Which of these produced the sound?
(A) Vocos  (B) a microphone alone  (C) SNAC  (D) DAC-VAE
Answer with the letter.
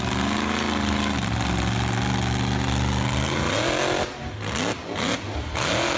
B